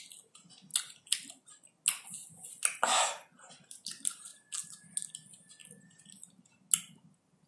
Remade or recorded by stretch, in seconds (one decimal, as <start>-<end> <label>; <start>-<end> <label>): 0.0-7.5 recorded